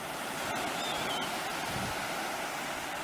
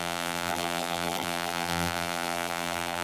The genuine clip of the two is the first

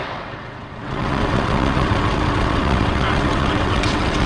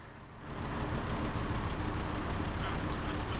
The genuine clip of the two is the second